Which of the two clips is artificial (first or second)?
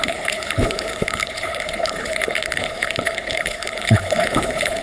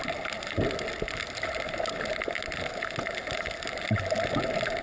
first